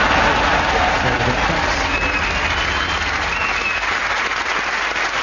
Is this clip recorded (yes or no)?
yes